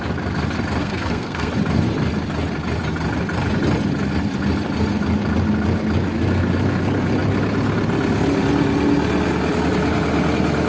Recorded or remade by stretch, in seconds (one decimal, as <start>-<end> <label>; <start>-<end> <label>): 0.0-0.8 recorded; 0.8-1.5 remade; 1.5-10.7 recorded